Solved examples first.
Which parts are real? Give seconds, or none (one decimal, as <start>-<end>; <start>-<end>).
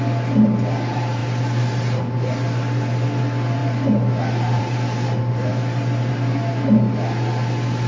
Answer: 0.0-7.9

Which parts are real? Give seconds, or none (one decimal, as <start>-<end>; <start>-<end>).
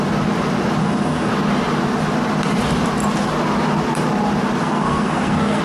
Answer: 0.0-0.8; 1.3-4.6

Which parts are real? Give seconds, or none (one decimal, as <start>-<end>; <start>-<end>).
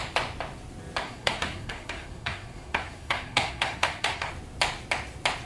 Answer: 0.0-1.0; 4.3-5.5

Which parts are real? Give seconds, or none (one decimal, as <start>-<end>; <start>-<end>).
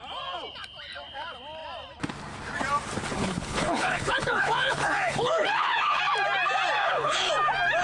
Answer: 0.0-3.1; 6.0-6.8; 7.3-7.8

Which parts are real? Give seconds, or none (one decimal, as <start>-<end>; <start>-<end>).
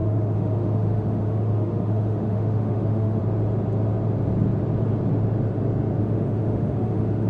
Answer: 3.2-6.0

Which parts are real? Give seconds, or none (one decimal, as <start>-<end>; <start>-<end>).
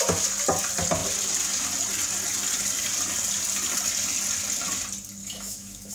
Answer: 0.0-5.2